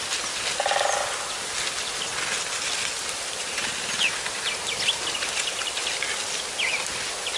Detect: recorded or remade recorded